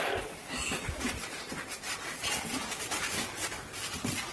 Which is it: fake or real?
real